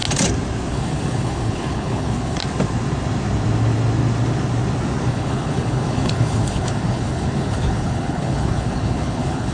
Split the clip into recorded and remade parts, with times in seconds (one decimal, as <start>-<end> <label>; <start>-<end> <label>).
0.0-0.7 recorded; 0.7-2.4 remade; 2.4-5.1 recorded; 5.1-9.5 remade